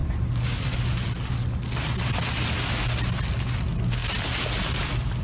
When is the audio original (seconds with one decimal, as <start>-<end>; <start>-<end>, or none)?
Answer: 0.0-5.2